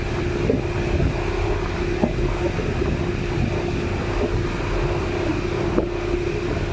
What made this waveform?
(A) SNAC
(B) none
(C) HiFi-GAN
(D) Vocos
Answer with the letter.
B